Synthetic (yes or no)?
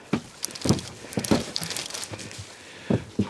no